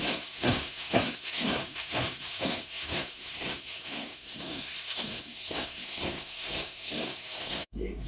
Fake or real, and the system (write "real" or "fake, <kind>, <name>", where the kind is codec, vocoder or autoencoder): fake, codec, SNAC